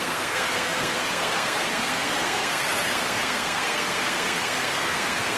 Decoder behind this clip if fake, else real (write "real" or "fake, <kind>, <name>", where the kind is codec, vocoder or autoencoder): fake, codec, SNAC